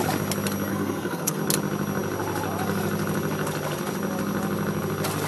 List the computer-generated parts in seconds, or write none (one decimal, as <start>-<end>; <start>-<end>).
0.7-1.4

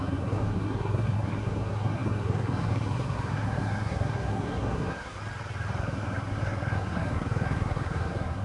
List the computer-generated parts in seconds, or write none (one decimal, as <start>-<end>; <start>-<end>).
0.0-5.2; 5.8-8.4

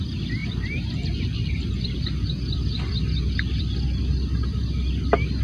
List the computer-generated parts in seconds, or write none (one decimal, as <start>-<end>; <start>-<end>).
none

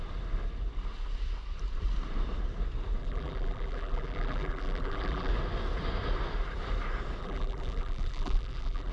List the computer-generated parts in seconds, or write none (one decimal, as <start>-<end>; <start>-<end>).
3.0-5.3; 7.2-8.9

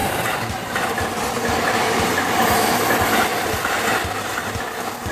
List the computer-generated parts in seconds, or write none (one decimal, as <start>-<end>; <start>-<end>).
0.0-1.2